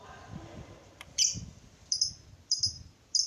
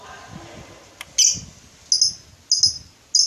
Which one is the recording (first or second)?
second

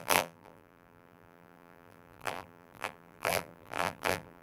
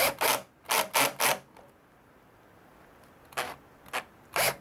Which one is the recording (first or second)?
second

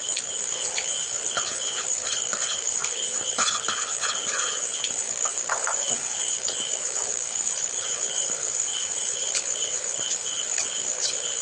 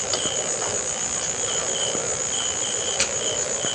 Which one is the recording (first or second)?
second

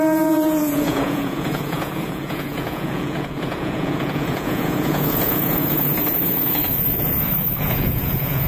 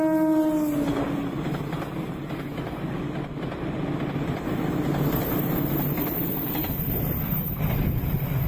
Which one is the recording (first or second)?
second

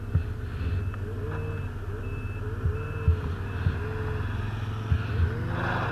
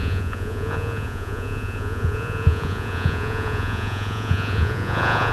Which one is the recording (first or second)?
first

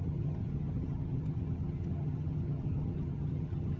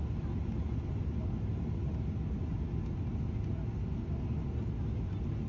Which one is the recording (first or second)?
second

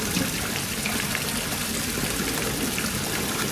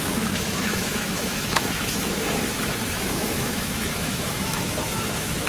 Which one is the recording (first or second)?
first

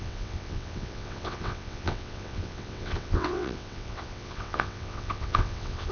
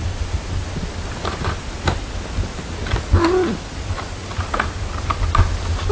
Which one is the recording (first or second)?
second